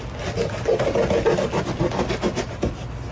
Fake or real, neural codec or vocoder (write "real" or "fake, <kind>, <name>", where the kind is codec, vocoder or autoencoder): real